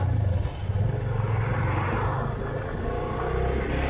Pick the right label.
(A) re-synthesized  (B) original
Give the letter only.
B